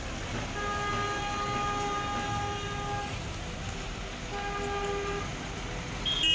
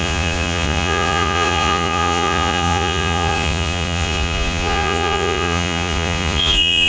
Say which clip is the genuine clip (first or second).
first